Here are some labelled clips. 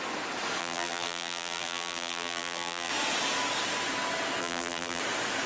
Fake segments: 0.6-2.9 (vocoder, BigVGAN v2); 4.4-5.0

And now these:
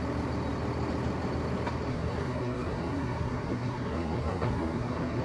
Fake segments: 1.9-5.2 (codec, SNAC)

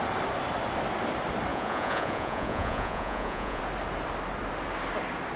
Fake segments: 1.5-3.6 (vocoder, Vocos)

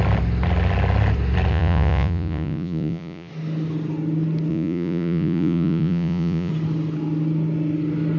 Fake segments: 1.5-3.3 (vocoder, Vocos); 4.5-6.5

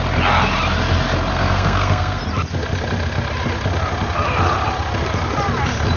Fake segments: 1.3-2.2 (codec, SNAC)

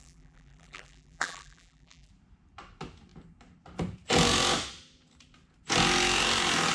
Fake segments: 0.0-2.1 (vocoder, BigVGAN v2)